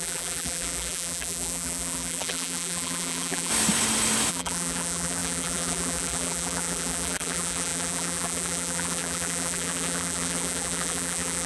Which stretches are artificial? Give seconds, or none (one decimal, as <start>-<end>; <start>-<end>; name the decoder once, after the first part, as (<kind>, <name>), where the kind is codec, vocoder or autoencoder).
0.0-3.5 (vocoder, BigVGAN v2); 4.3-11.5

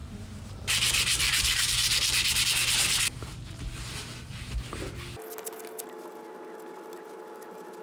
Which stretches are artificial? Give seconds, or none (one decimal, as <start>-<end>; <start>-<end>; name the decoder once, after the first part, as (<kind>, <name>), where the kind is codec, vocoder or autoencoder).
0.0-3.3 (vocoder, BigVGAN v2)

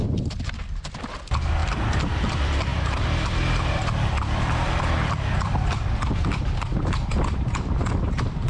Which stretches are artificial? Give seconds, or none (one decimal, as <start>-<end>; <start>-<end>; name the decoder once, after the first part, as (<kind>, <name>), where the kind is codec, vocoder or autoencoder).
0.0-8.5 (vocoder, BigVGAN v2)